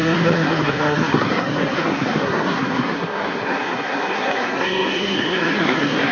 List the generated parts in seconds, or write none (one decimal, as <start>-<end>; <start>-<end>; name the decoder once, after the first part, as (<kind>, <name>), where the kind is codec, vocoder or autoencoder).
0.0-6.1 (codec, SNAC)